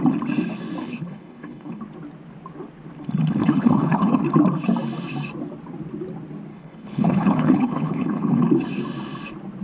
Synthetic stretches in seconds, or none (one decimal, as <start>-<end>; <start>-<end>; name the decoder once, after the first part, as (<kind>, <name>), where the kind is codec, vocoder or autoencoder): 0.8-1.8 (codec, HILCodec); 3.4-4.2; 6.5-8.4